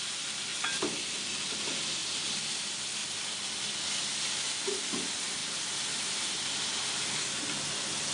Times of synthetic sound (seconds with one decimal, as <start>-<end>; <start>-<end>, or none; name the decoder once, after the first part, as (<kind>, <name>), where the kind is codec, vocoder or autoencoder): 2.0-2.5 (vocoder, BigVGAN v2); 3.0-4.1; 5.4-7.4